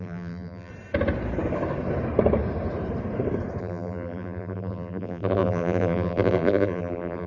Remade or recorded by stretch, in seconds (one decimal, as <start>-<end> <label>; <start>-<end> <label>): 0.0-0.7 remade; 0.7-3.6 recorded; 3.6-7.3 remade